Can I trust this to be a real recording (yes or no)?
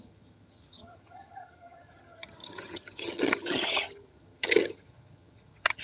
no